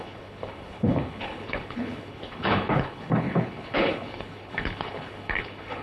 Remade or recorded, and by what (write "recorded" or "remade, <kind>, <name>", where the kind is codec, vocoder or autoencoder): remade, codec, HILCodec